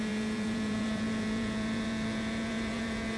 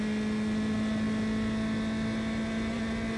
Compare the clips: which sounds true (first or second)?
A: second